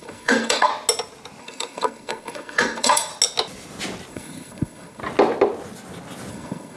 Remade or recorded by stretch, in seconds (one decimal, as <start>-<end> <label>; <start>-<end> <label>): 0.0-0.7 remade; 0.7-1.4 recorded; 1.4-3.1 remade; 3.1-4.1 recorded; 4.1-5.0 remade; 5.0-6.3 recorded; 6.3-6.8 remade